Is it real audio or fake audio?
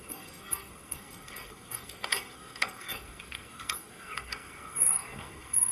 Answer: fake